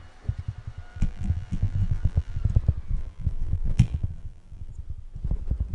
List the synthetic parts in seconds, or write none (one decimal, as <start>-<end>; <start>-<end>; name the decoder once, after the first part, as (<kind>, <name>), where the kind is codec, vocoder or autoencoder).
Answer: 0.9-2.4 (vocoder, BigVGAN v2); 3.0-4.7